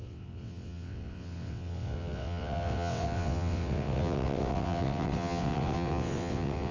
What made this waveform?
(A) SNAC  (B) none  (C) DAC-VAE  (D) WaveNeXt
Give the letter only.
D